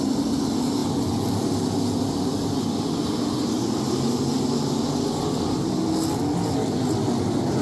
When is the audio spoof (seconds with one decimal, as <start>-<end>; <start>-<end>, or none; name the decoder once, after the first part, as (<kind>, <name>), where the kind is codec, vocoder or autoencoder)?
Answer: none